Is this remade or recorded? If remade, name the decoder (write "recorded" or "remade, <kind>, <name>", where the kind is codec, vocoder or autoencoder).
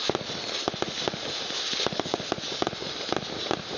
recorded